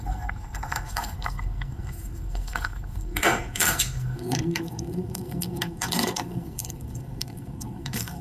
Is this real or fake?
fake